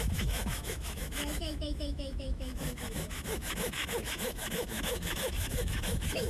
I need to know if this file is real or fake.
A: fake